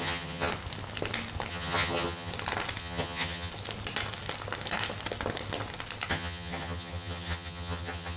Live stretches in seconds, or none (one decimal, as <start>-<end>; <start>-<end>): 0.5-1.5; 2.3-2.8; 3.5-6.1